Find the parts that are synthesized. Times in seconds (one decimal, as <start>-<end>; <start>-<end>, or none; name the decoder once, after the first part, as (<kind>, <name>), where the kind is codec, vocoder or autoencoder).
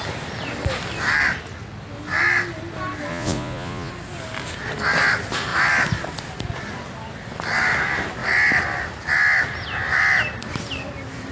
3.1-3.9 (vocoder, Vocos)